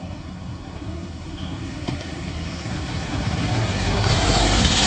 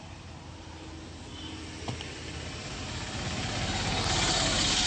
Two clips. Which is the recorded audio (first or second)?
second